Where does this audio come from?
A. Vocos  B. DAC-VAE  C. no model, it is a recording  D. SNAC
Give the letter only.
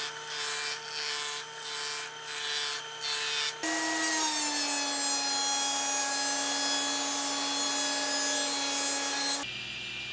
C